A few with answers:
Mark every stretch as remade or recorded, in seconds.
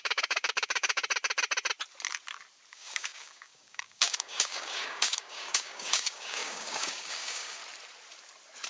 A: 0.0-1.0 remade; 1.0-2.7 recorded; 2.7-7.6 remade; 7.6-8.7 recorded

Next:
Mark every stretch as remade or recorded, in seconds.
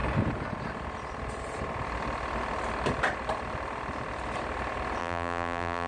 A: 0.0-5.0 recorded; 5.0-5.9 remade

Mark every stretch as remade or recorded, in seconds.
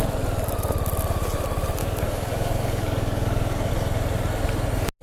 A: 0.0-1.8 recorded; 1.8-3.7 remade; 3.7-5.0 recorded